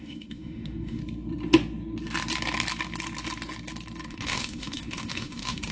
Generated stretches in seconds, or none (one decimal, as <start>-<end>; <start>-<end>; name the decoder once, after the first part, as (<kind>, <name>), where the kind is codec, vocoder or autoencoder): 0.0-1.0 (autoencoder, DAC-VAE); 4.1-5.7